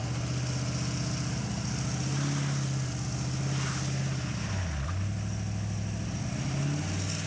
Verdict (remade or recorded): recorded